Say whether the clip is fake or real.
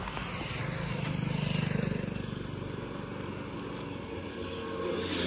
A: real